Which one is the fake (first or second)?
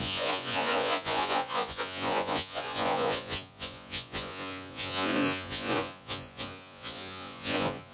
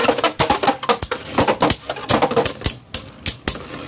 first